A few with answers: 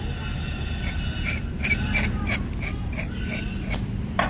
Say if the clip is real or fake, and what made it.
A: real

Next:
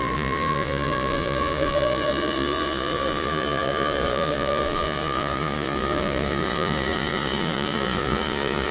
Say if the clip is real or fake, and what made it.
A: fake, vocoder, Vocos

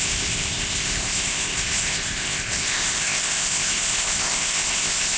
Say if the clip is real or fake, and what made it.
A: fake, codec, ZipCodec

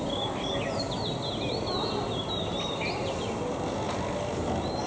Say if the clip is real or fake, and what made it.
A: real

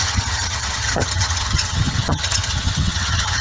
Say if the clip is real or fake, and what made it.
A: fake, vocoder, HiFi-GAN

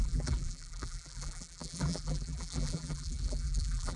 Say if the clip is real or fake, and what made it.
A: fake, vocoder, BigVGAN v2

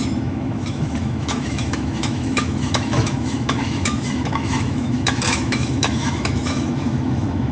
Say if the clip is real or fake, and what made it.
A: fake, autoencoder, DAC-VAE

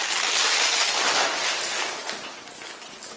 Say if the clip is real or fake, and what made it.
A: real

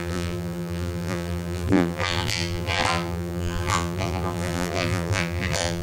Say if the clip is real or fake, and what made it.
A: fake, vocoder, BigVGAN v2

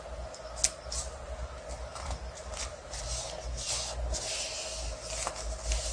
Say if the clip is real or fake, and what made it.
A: real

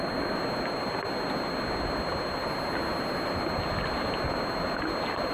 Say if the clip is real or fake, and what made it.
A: real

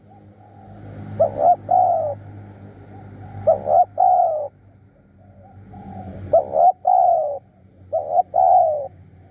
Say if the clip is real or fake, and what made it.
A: real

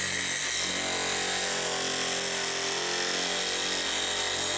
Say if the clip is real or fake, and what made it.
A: real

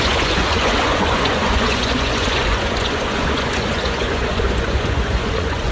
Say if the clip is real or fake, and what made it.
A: fake, vocoder, Vocos